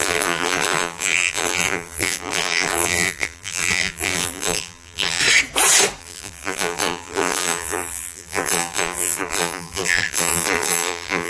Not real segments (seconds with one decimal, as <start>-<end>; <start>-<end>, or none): 0.0-5.2; 6.0-11.3